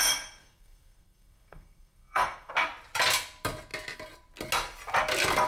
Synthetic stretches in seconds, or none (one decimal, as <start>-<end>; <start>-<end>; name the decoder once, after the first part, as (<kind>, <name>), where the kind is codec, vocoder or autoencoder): 0.4-2.5 (codec, SNAC)